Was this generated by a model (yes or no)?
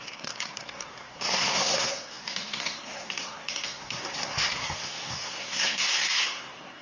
yes